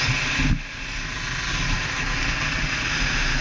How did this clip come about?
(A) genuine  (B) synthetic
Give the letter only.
A